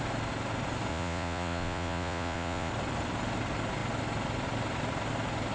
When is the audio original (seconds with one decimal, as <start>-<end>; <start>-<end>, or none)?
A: 0.0-0.9; 2.7-5.5